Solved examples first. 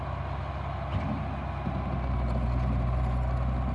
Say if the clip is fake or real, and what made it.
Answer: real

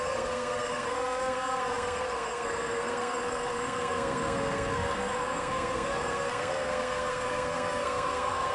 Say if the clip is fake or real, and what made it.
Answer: fake, codec, SNAC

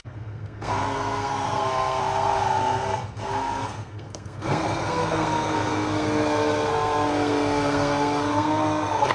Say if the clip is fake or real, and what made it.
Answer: fake, codec, SNAC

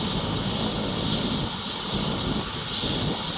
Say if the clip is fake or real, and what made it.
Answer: real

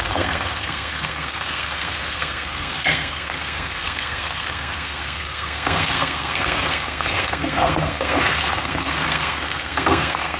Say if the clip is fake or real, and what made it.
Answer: fake, codec, SNAC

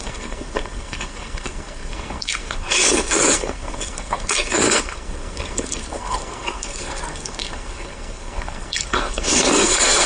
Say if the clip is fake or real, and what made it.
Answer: fake, codec, SNAC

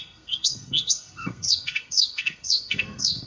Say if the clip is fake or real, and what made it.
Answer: fake, codec, SNAC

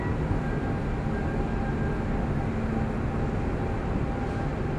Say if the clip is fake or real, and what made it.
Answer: real